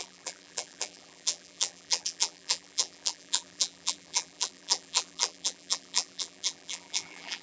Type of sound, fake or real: fake